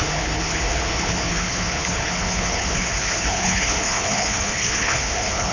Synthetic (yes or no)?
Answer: yes